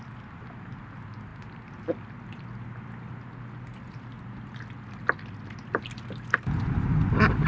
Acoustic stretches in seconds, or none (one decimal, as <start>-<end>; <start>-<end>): 0.0-7.5